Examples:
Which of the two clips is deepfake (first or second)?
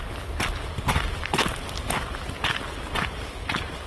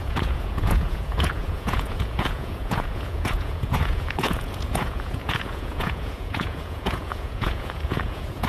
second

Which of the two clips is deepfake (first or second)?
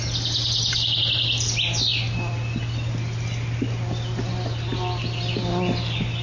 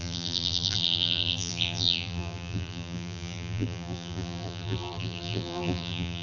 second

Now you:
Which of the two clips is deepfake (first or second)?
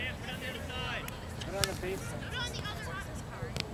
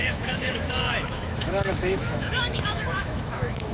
second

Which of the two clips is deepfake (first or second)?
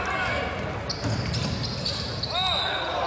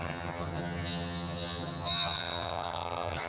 second